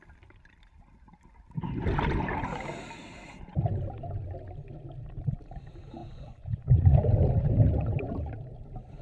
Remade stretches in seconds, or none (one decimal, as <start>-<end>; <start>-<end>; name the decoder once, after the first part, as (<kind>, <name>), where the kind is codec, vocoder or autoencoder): 6.0-7.0 (vocoder, Vocos)